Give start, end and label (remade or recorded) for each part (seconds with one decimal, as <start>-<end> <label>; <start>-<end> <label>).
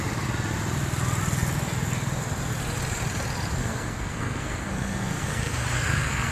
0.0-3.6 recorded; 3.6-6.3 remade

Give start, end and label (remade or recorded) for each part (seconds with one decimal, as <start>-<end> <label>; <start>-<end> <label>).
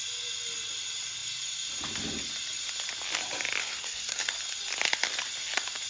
0.0-3.6 recorded; 3.6-4.3 remade; 4.3-5.9 recorded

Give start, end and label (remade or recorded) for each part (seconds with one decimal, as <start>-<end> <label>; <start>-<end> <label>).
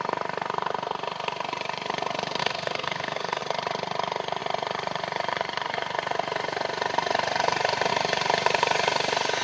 0.0-2.4 recorded; 2.4-3.4 remade; 3.4-9.4 recorded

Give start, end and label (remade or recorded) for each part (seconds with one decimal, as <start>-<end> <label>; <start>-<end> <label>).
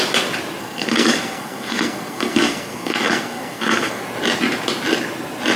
0.0-0.6 recorded; 0.6-4.0 remade; 4.0-5.6 recorded